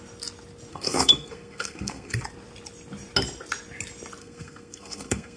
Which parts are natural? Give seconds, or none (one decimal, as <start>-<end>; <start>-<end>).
0.0-0.7; 2.2-4.2